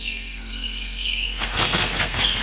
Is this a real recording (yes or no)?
no